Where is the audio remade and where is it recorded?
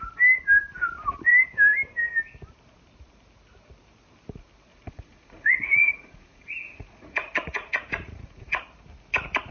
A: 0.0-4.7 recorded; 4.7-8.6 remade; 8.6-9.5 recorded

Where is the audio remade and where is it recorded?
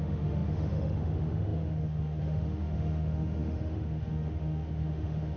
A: 0.0-5.4 remade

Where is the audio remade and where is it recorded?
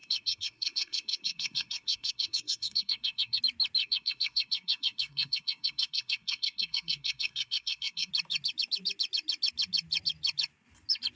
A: 0.0-3.4 remade; 3.4-3.8 recorded; 3.8-8.1 remade; 8.1-11.2 recorded